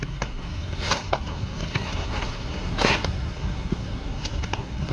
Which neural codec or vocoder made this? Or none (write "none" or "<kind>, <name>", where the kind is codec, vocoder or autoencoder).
codec, SNAC